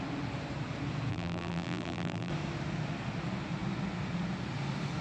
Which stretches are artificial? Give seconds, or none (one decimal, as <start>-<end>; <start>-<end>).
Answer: 1.1-2.3